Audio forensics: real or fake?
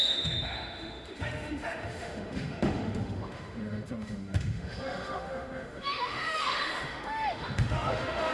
fake